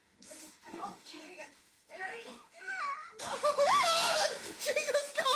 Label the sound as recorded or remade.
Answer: remade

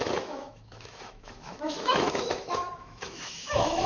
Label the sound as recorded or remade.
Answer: remade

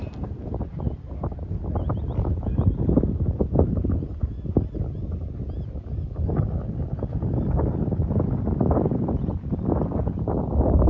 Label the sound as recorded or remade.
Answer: recorded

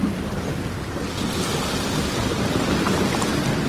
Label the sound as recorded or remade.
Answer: recorded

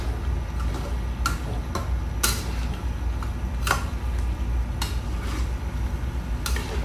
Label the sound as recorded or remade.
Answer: recorded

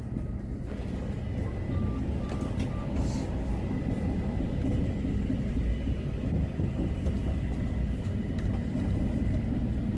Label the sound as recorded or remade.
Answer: recorded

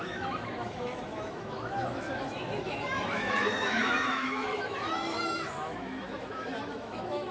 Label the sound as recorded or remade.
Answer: remade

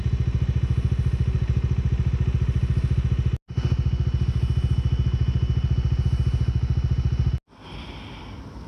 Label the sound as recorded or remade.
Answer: recorded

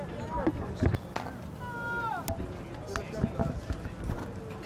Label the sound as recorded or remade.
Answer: recorded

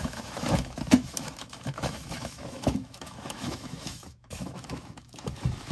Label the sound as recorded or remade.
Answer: remade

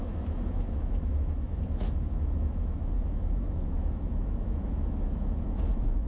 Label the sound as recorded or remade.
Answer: remade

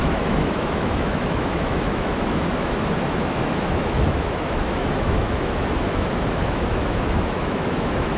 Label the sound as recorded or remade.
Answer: remade